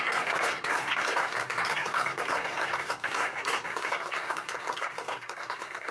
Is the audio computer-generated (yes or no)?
yes